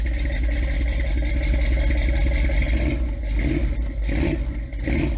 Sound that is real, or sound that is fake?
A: real